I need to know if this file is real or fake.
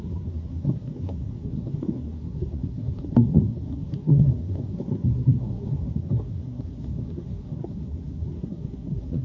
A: fake